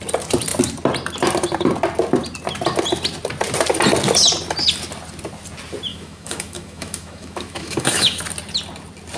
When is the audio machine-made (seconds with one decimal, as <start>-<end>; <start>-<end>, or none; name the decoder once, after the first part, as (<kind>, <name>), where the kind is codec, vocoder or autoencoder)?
5.9-8.2 (autoencoder, DAC-VAE)